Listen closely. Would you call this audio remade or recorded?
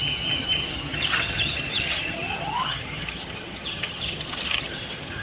remade